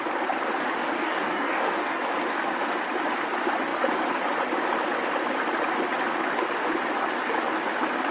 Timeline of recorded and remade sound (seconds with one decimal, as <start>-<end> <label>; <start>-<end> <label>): 0.0-1.0 recorded; 1.0-2.0 remade; 2.0-8.1 recorded